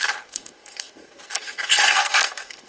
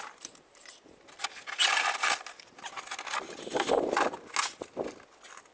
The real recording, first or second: second